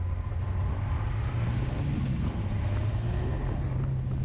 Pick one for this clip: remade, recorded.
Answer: recorded